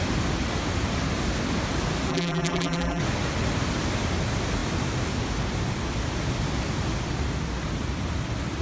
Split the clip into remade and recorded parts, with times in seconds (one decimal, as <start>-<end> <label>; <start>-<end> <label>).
0.0-2.1 recorded; 2.1-3.0 remade; 3.0-8.6 recorded